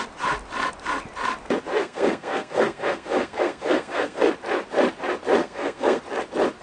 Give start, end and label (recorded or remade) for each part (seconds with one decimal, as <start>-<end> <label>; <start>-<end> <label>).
0.0-1.8 recorded; 1.8-4.3 remade; 4.3-5.4 recorded; 5.4-6.0 remade; 6.0-6.6 recorded